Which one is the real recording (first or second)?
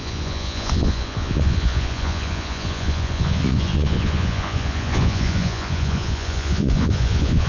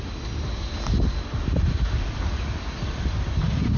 second